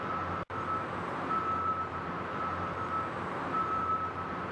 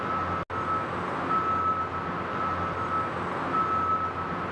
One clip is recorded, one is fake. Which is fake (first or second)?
first